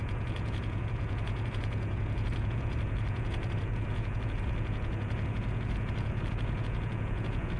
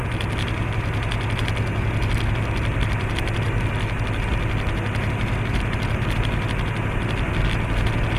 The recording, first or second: second